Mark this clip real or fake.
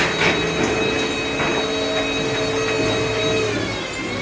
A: real